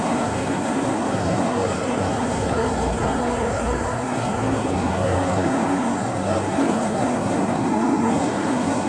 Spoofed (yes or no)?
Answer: yes